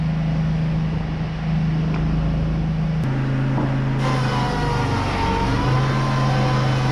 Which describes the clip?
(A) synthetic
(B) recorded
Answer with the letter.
B